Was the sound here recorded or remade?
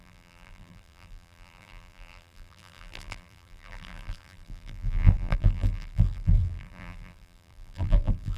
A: remade